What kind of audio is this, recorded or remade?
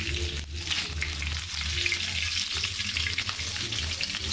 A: recorded